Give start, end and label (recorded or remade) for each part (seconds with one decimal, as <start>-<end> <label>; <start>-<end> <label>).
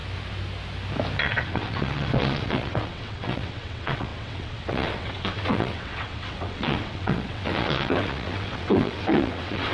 0.0-1.2 recorded; 1.2-9.7 remade